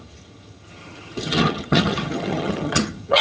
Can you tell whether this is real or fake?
fake